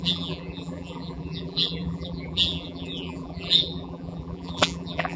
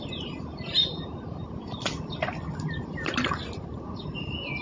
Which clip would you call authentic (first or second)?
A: second